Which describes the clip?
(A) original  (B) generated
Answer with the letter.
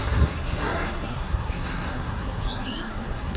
B